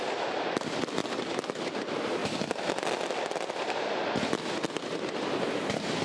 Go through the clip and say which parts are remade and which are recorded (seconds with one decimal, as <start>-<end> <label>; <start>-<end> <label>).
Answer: 0.0-1.0 remade; 1.0-1.6 recorded; 1.6-2.2 remade; 2.2-5.0 recorded; 5.0-6.0 remade